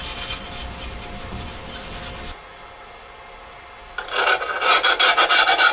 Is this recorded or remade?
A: recorded